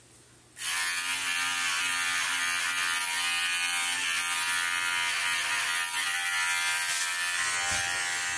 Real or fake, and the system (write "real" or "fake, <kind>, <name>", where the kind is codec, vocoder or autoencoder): real